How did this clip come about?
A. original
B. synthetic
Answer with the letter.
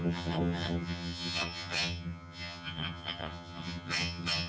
B